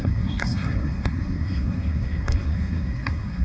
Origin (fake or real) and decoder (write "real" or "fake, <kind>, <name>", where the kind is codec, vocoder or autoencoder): fake, codec, SNAC